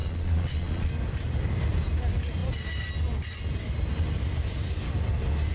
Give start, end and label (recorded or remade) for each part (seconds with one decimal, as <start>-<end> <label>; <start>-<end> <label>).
0.0-0.9 remade; 0.9-5.5 recorded